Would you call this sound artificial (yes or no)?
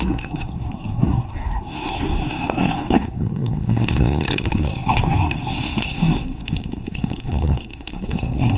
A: yes